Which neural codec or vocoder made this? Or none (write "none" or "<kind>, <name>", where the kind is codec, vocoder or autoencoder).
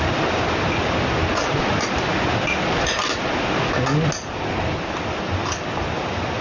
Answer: none